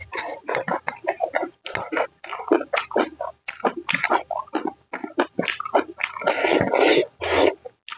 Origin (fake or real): real